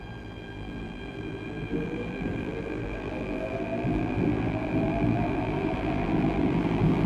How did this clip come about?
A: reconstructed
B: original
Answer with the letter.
A